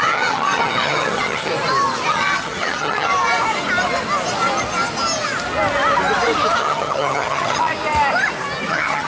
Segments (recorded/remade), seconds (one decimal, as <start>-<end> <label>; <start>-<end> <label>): 0.0-1.5 remade; 1.5-2.1 recorded; 2.1-3.1 remade; 3.1-6.6 recorded; 6.6-7.7 remade; 7.7-8.7 recorded; 8.7-9.1 remade